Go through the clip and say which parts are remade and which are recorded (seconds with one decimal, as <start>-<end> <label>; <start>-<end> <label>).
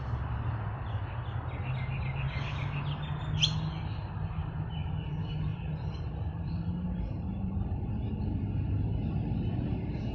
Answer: 0.0-4.4 recorded; 4.4-5.1 remade; 5.1-5.5 recorded; 5.5-8.1 remade; 8.1-10.1 recorded